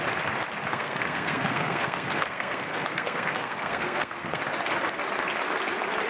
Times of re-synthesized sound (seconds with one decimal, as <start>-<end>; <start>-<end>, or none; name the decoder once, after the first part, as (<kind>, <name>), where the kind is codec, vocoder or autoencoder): 0.7-4.4 (codec, SNAC)